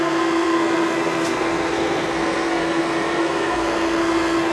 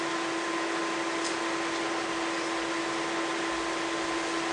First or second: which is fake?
first